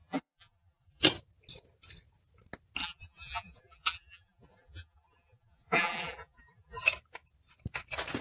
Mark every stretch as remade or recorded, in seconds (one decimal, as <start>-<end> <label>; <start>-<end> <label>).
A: 0.0-1.0 remade; 1.0-2.8 recorded; 2.8-6.8 remade; 6.8-8.2 recorded